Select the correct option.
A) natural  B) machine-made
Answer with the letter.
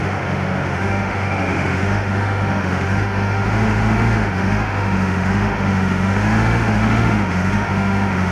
B